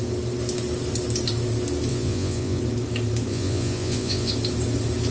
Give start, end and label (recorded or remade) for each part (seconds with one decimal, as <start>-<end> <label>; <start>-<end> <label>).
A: 0.0-1.9 recorded; 1.9-2.6 remade; 2.6-3.3 recorded; 3.3-4.3 remade; 4.3-5.1 recorded